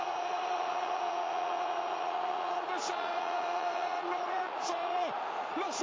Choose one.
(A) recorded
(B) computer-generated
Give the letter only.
B